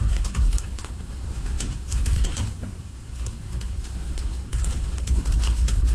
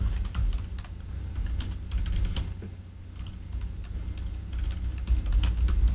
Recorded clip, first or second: second